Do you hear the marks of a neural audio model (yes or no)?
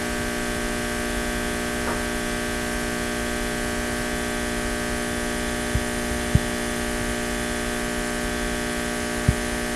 no